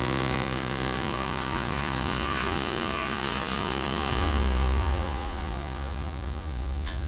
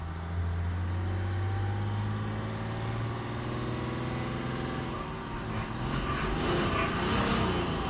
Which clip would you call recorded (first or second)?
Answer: second